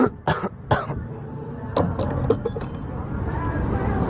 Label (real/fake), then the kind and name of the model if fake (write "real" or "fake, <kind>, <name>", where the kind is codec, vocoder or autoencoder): real